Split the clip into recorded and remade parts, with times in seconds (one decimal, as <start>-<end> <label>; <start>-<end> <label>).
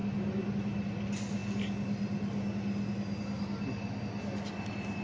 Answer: 0.0-5.0 recorded